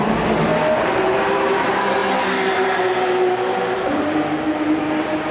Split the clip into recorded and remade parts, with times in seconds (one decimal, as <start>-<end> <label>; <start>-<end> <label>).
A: 0.0-0.5 remade; 0.5-1.3 recorded; 1.3-2.0 remade; 2.0-5.3 recorded